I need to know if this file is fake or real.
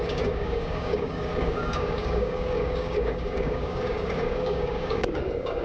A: fake